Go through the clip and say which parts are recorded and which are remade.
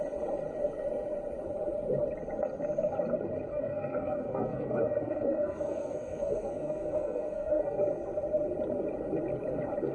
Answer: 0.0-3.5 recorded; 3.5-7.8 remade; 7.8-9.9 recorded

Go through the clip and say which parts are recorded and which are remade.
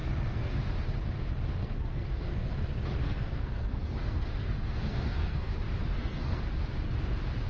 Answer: 0.0-0.6 remade; 0.6-1.6 recorded; 1.6-2.5 remade; 2.5-3.0 recorded; 3.0-5.5 remade; 5.5-5.9 recorded; 5.9-6.4 remade; 6.4-7.5 recorded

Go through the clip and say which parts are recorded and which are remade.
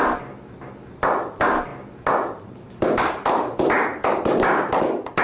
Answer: 0.0-5.2 recorded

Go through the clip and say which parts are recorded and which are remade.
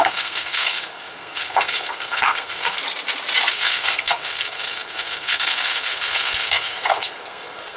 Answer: 0.0-2.8 remade; 2.8-3.5 recorded; 3.5-7.8 remade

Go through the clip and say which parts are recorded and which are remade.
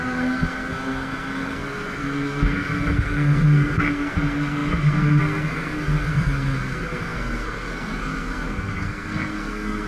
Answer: 0.0-9.9 remade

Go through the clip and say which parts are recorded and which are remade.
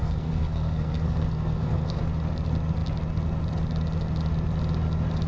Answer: 0.0-2.0 remade; 2.0-5.3 recorded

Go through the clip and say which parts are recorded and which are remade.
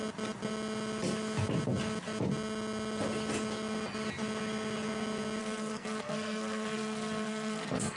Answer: 0.0-5.4 recorded; 5.4-8.0 remade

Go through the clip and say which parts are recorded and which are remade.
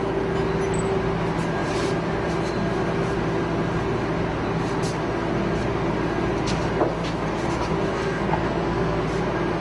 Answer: 0.0-7.9 recorded; 7.9-9.0 remade; 9.0-9.6 recorded